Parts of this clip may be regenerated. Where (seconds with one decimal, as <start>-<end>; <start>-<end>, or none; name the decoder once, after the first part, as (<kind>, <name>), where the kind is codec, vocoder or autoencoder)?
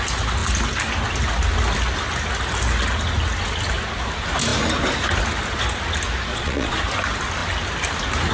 6.3-6.8 (vocoder, Vocos)